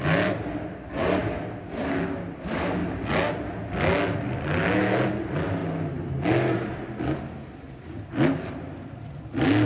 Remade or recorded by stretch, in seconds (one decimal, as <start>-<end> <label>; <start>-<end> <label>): 0.0-9.7 recorded

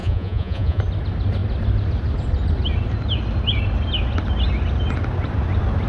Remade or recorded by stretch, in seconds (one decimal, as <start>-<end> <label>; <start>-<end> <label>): 0.0-0.8 remade; 0.8-5.9 recorded

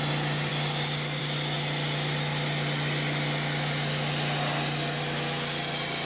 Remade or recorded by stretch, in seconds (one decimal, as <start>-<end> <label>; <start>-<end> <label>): 0.0-6.1 recorded

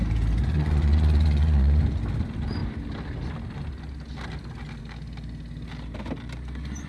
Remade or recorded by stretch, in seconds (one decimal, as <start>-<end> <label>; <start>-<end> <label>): 0.0-0.4 recorded; 0.4-1.8 remade; 1.8-6.9 recorded

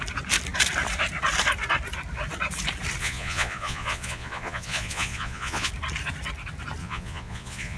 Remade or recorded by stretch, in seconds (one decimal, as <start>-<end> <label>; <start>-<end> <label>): 0.0-3.0 recorded; 3.0-5.7 remade; 5.7-6.8 recorded; 6.8-7.8 remade

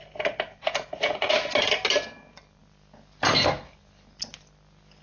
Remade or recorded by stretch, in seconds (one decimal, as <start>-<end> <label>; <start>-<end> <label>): 0.0-0.6 recorded; 0.6-1.2 remade; 1.2-5.0 recorded

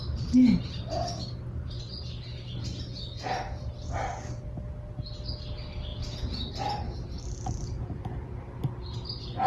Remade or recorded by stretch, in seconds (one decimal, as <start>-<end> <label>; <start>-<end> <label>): 0.0-5.9 recorded; 5.9-6.5 remade; 6.5-9.5 recorded